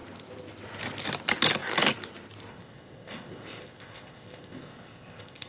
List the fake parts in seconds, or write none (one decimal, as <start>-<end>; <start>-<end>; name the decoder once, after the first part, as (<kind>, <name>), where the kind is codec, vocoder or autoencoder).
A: 2.5-5.5 (codec, ZipCodec)